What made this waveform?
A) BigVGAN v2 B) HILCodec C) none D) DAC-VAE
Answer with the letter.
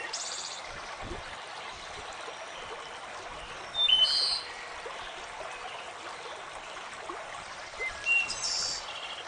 C